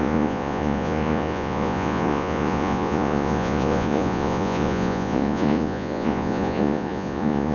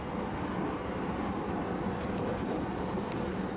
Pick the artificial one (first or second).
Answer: first